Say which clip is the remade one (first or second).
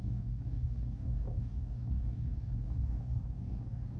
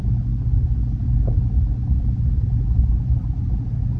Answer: first